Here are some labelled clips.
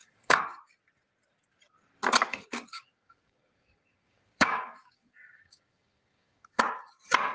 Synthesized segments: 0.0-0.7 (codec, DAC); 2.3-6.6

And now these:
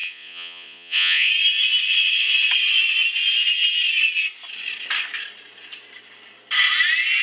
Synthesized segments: 0.0-1.3 (vocoder, Vocos)

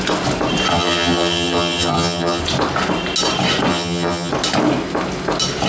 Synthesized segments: 0.7-2.4 (vocoder, HiFi-GAN); 3.7-4.3

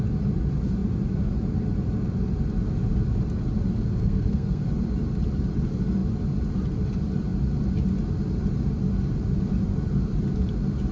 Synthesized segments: 4.0-4.7 (codec, SNAC)

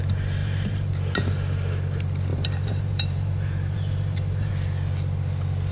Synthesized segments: 0.4-0.9 (vocoder, BigVGAN v2); 2.3-4.5